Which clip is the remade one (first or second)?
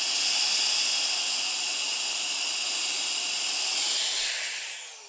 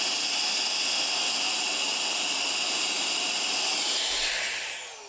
first